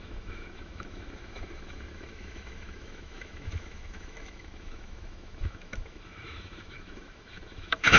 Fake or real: fake